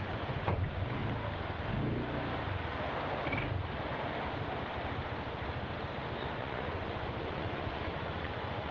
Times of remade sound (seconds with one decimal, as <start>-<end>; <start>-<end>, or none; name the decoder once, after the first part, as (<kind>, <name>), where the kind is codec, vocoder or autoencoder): 0.0-1.0 (vocoder, Vocos); 6.2-8.7